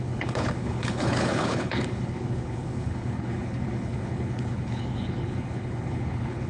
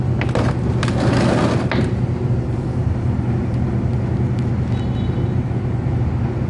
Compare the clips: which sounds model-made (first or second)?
first